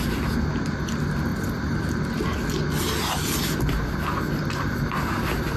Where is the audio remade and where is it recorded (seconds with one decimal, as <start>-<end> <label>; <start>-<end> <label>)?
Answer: 0.0-5.6 recorded